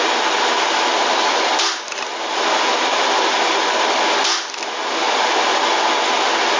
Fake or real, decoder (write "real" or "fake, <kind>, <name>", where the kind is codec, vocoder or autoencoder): real